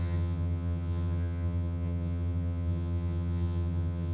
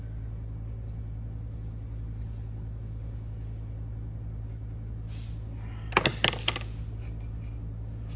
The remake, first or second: first